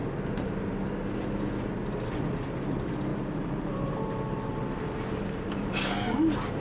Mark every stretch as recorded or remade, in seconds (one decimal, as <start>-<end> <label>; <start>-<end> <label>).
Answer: 0.0-3.1 recorded; 3.1-5.9 remade; 5.9-6.6 recorded